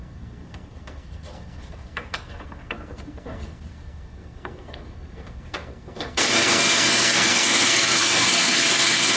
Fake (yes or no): yes